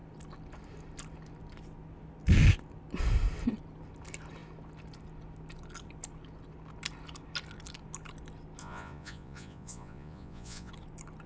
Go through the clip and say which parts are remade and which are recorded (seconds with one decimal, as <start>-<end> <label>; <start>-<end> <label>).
0.0-8.6 recorded; 8.6-10.7 remade; 10.7-11.3 recorded